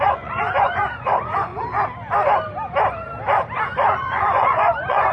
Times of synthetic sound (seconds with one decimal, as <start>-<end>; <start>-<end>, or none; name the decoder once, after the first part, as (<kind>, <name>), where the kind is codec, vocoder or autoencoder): 0.0-1.5 (vocoder, Vocos); 3.6-5.1